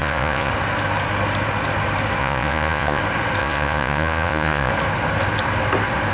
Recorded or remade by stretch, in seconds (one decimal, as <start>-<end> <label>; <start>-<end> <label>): 0.0-0.5 remade; 0.5-2.2 recorded; 2.2-3.0 remade; 3.0-3.4 recorded; 3.4-4.7 remade; 4.7-6.1 recorded